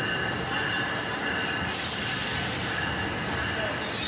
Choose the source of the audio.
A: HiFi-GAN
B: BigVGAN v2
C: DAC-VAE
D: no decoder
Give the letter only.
D